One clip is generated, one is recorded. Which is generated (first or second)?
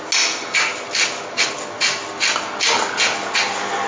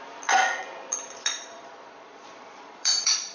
second